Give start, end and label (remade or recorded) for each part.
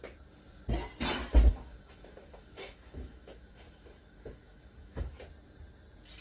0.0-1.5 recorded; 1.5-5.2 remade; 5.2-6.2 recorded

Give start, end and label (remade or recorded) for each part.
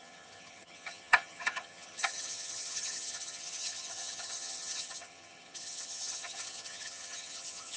0.0-7.8 remade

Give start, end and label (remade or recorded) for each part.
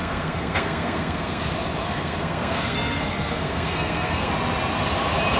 0.0-1.4 remade; 1.4-1.8 recorded; 1.8-4.3 remade; 4.3-5.4 recorded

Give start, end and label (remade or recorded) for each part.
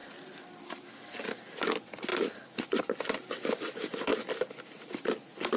0.0-5.6 recorded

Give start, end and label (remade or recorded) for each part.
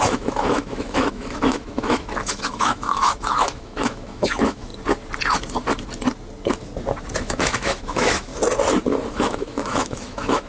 0.0-4.7 remade; 4.7-7.2 recorded; 7.2-8.3 remade; 8.3-9.1 recorded; 9.1-10.5 remade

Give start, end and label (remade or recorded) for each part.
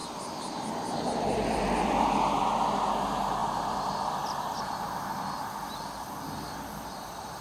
0.0-2.4 remade; 2.4-7.4 recorded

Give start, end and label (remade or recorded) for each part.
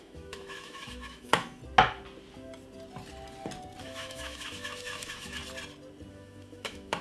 0.0-1.6 remade; 1.6-3.8 recorded; 3.8-5.4 remade; 5.4-6.1 recorded; 6.1-7.0 remade